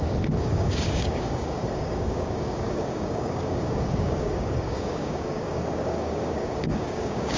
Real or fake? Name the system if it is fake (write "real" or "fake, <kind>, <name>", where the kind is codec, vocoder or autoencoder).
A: fake, codec, DAC